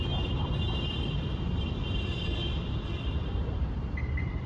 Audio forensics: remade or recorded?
remade